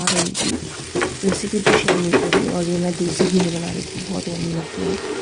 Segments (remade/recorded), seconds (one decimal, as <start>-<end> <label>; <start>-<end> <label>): 0.0-1.6 recorded; 1.6-4.7 remade; 4.7-5.2 recorded